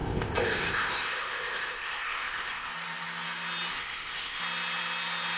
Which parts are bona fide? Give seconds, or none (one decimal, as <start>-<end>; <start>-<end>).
2.7-3.7; 4.4-5.4